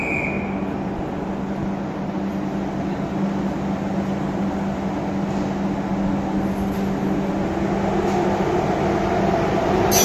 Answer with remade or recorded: recorded